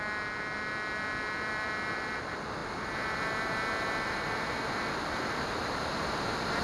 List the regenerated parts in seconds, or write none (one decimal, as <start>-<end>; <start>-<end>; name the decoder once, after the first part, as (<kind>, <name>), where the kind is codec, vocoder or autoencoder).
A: none